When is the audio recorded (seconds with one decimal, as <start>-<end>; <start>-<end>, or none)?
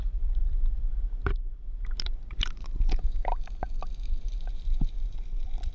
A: 3.3-3.8